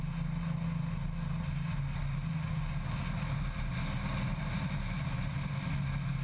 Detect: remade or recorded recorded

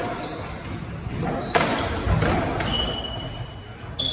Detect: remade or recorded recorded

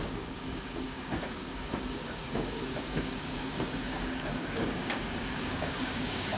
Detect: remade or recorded remade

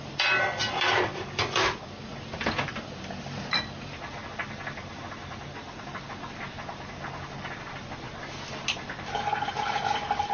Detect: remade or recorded recorded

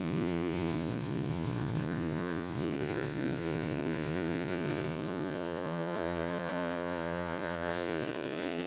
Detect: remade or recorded remade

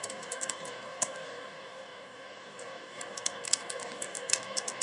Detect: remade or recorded remade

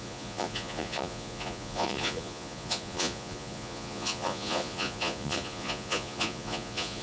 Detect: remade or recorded remade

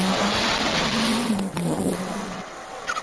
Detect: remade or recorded remade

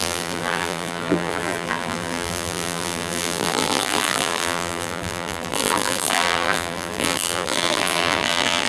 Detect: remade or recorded remade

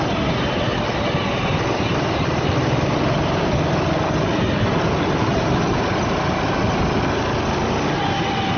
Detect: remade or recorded recorded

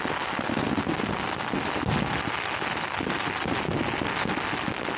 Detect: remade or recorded recorded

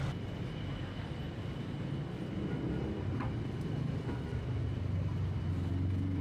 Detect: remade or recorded recorded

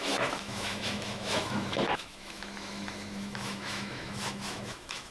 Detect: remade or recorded remade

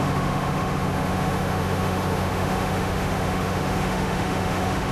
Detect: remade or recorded remade